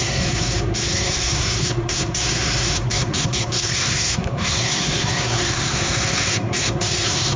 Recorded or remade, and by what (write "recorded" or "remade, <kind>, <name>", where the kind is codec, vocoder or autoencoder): remade, codec, SNAC